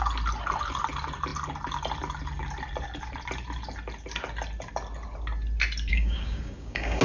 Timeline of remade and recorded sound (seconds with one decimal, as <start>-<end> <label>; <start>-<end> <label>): 0.0-5.9 recorded; 5.9-7.0 remade